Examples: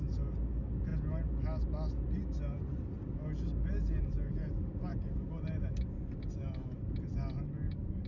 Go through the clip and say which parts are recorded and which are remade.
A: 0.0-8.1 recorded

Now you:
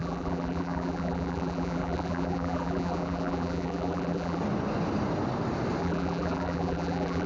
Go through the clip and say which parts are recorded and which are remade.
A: 0.0-4.4 remade; 4.4-5.8 recorded; 5.8-7.3 remade